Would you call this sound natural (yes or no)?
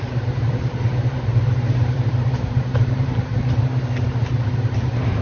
no